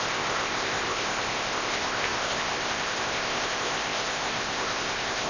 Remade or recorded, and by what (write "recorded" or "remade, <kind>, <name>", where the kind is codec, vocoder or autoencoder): remade, codec, ZipCodec